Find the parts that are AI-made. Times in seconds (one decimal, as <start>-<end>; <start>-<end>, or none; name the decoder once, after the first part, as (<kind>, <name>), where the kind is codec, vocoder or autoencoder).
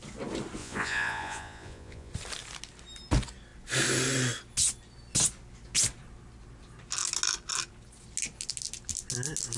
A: 0.6-2.1 (vocoder, Vocos)